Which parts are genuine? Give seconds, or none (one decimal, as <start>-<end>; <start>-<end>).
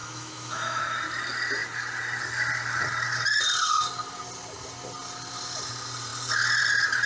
0.8-7.1